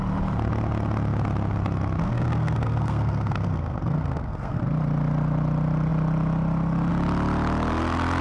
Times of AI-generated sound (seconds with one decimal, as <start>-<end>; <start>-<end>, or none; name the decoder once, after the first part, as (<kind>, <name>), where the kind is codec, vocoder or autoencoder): 2.0-4.6 (codec, SNAC)